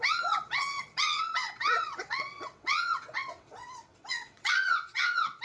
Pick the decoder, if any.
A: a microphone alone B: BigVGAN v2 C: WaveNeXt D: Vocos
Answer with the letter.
C